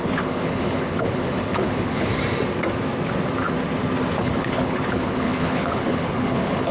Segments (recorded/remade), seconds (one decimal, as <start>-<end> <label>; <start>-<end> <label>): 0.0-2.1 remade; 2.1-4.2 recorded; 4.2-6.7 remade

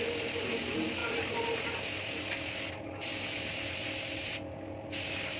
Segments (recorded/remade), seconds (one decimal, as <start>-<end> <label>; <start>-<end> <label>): 0.0-5.4 recorded

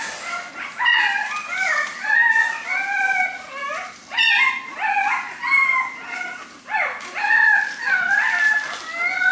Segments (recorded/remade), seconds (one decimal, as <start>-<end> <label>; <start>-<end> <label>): 0.0-9.3 recorded

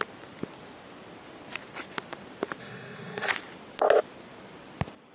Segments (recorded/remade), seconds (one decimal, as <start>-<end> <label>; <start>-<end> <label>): 0.0-2.6 recorded; 2.6-3.3 remade; 3.3-5.1 recorded

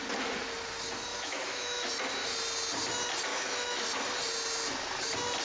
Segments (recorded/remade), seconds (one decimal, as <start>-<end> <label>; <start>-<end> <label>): 0.0-1.1 recorded; 1.1-1.9 remade; 1.9-3.3 recorded; 3.3-3.9 remade; 3.9-5.4 recorded

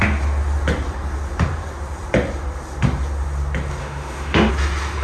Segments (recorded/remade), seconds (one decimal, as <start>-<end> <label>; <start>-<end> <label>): 0.0-3.8 recorded; 3.8-4.5 remade; 4.5-5.0 recorded

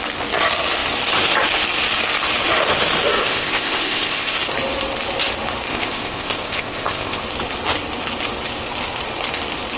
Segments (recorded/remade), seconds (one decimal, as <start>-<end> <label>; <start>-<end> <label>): 0.0-3.2 recorded; 3.2-4.4 remade; 4.4-5.7 recorded; 5.7-7.2 remade; 7.2-9.8 recorded